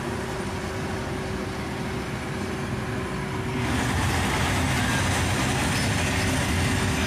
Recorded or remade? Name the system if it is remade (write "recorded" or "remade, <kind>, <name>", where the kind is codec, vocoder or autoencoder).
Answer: recorded